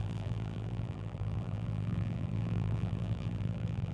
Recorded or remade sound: remade